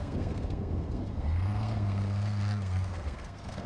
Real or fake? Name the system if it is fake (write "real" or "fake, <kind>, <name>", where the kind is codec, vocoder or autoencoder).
fake, codec, SNAC